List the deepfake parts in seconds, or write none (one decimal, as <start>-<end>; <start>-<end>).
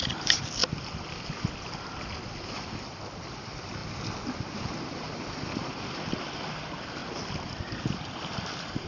0.0-0.6; 2.7-3.8; 4.8-7.0; 7.8-8.9